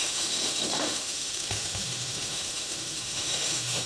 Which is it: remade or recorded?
remade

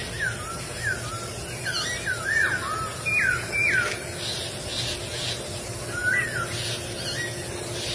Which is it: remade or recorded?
recorded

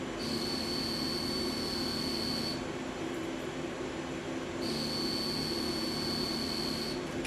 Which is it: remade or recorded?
recorded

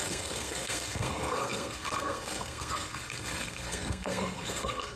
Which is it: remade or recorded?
remade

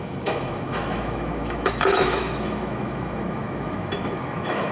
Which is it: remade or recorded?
remade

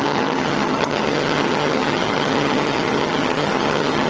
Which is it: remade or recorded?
remade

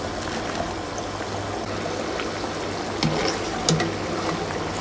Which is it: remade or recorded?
recorded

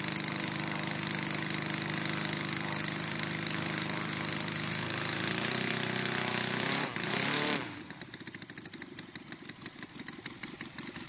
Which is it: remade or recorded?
remade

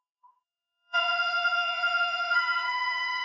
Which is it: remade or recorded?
remade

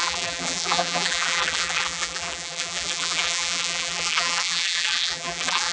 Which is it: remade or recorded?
remade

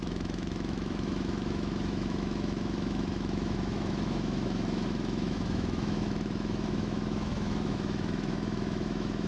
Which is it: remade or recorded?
remade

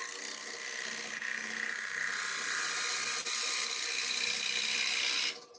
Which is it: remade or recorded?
recorded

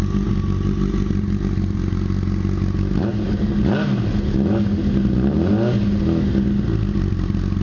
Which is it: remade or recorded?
recorded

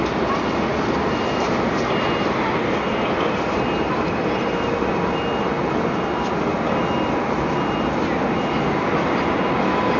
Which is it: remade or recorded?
recorded